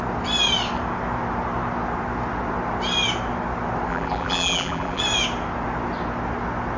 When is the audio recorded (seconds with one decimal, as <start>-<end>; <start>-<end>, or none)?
0.0-3.9; 5.0-6.8